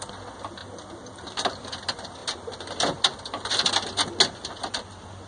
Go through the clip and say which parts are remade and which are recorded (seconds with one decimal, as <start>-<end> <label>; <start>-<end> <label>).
0.0-5.3 recorded